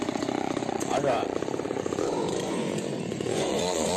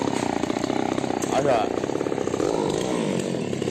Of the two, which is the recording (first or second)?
second